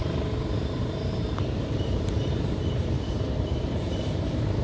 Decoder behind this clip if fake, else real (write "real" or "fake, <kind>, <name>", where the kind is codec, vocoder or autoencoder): fake, vocoder, BigVGAN v2